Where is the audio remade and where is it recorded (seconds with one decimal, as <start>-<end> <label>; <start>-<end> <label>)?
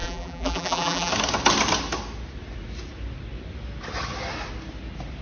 0.0-1.1 remade; 1.1-5.2 recorded